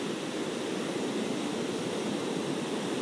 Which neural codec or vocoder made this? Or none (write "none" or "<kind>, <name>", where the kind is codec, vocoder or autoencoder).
none